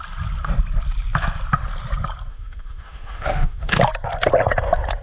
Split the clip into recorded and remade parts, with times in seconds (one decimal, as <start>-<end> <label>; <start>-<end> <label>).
0.0-2.3 recorded; 2.3-3.8 remade; 3.8-5.0 recorded